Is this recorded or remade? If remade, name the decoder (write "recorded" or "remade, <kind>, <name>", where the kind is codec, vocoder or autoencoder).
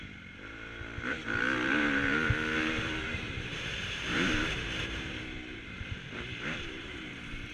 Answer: remade, vocoder, BigVGAN v2